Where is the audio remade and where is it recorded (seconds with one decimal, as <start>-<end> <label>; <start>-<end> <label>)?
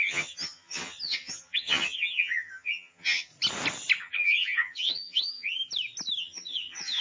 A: 0.0-3.3 remade; 3.3-4.0 recorded; 4.0-5.6 remade; 5.6-6.2 recorded; 6.2-7.0 remade